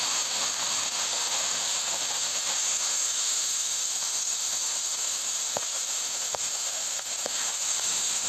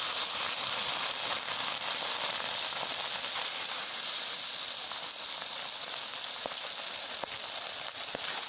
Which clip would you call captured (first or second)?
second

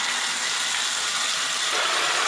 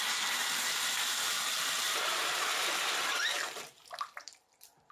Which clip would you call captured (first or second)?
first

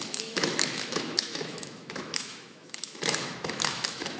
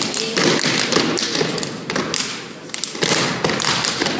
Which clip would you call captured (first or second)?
second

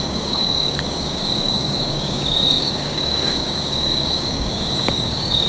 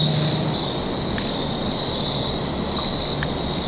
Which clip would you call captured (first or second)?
second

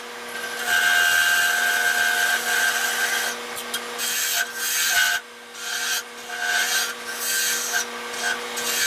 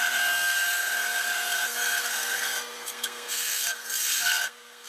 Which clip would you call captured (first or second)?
first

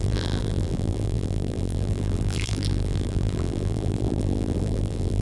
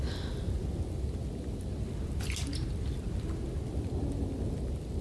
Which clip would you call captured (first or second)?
second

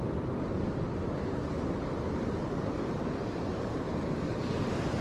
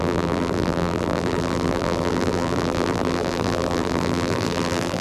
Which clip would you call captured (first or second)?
first